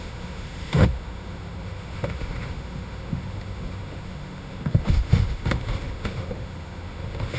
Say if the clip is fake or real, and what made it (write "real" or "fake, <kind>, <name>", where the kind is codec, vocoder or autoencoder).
fake, autoencoder, DAC-VAE